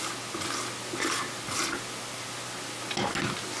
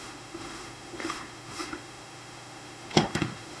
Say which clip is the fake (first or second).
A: second